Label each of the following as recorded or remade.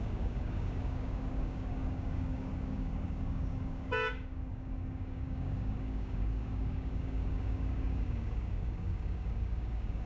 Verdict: remade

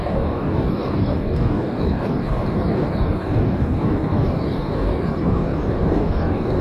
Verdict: remade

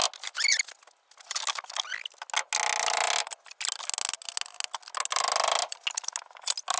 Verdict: recorded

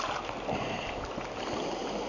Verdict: recorded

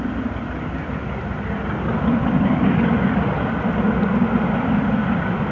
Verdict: recorded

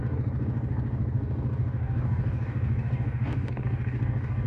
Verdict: remade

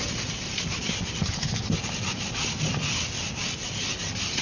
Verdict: recorded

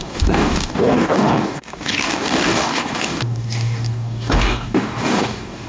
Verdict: remade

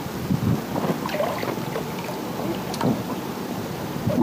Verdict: recorded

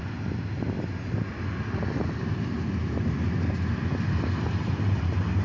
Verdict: recorded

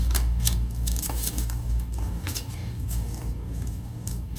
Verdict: remade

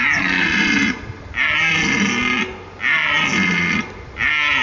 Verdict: recorded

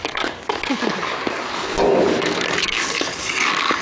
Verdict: remade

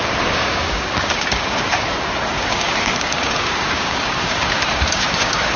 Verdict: remade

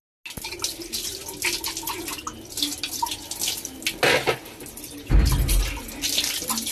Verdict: recorded